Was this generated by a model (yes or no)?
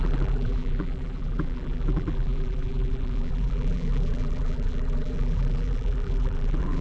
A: yes